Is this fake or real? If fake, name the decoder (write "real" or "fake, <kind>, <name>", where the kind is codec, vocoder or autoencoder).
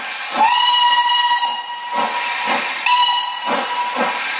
real